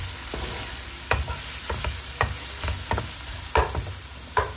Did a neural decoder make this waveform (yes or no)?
no